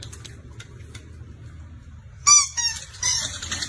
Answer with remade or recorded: recorded